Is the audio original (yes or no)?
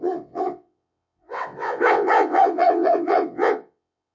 no